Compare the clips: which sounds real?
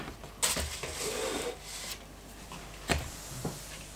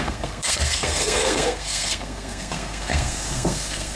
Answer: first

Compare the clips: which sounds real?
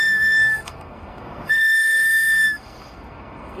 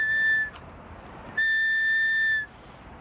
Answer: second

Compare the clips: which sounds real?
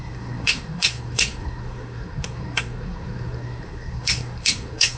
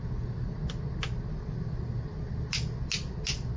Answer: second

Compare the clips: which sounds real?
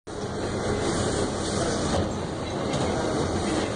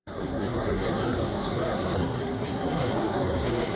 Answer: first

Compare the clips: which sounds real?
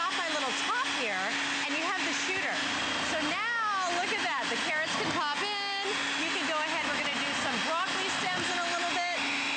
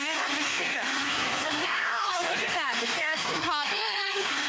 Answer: first